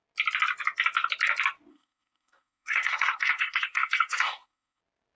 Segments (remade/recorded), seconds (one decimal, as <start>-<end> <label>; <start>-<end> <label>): 0.0-1.7 recorded; 1.7-4.8 remade; 4.8-5.2 recorded

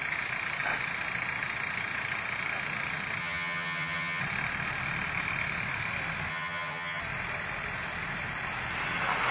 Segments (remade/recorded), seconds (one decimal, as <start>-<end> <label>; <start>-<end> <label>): 0.0-3.2 recorded; 3.2-4.2 remade; 4.2-6.3 recorded; 6.3-7.0 remade; 7.0-9.3 recorded